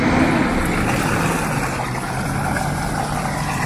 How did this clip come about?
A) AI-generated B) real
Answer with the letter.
B